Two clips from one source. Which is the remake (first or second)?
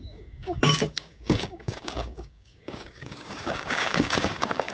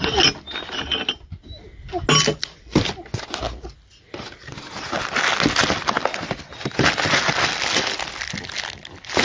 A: first